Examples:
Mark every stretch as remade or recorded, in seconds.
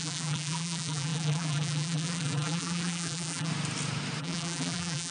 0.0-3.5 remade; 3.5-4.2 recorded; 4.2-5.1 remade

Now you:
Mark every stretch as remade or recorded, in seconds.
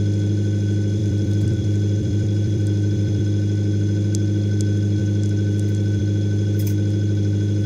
0.0-1.0 recorded; 1.0-3.2 remade; 3.2-7.7 recorded